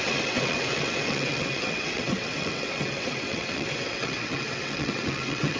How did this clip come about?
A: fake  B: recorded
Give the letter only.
A